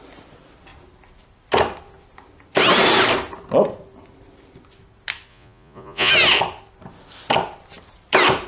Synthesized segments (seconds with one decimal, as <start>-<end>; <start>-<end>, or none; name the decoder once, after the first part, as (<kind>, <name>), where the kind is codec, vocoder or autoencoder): 5.3-6.1 (vocoder, Vocos)